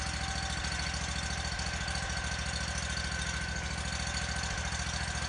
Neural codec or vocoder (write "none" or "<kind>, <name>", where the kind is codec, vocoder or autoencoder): none